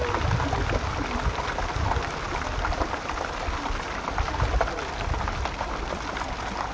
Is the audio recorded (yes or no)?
yes